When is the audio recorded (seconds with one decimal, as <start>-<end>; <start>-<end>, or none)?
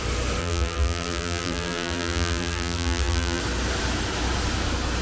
0.0-0.4; 3.4-5.0